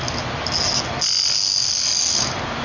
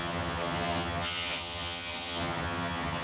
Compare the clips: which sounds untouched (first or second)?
first